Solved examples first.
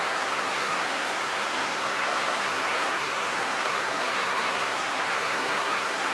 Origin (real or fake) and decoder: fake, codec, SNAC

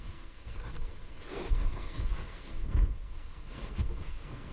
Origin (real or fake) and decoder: fake, codec, SNAC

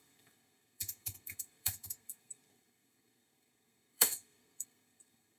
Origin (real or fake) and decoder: fake, codec, SNAC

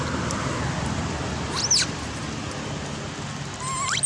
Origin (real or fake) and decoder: real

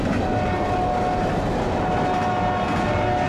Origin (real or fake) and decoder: real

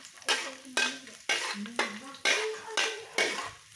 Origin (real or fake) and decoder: real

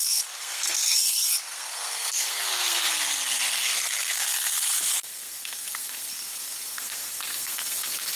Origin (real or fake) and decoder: fake, codec, SNAC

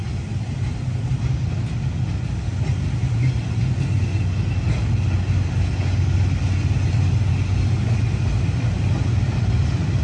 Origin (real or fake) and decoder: real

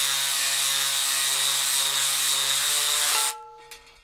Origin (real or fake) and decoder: real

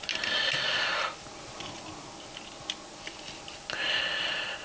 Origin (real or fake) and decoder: real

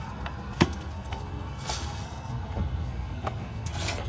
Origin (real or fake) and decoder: fake, codec, SNAC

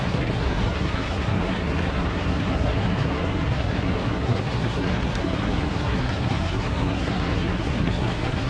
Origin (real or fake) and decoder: fake, codec, SNAC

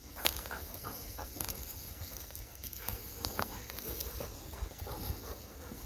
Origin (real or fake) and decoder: fake, codec, SNAC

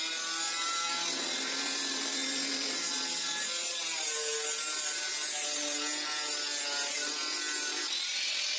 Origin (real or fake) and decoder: real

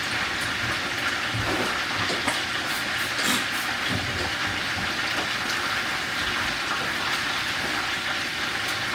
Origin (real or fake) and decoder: real